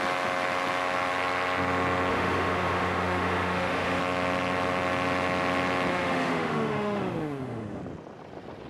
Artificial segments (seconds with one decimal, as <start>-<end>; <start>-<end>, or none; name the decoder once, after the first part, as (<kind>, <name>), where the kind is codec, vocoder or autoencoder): 2.1-4.0 (autoencoder, DAC-VAE); 5.9-7.8